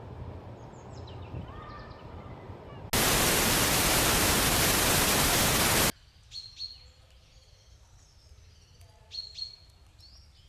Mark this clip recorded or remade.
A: recorded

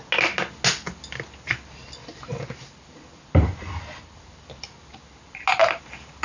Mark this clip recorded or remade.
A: recorded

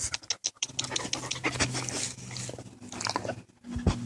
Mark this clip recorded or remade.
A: recorded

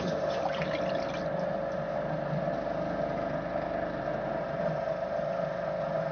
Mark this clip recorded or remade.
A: recorded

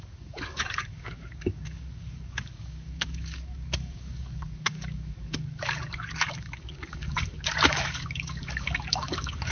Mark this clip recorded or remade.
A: remade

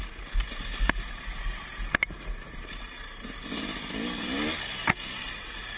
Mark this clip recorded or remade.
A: recorded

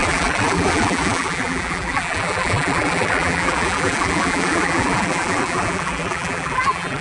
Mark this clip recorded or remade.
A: remade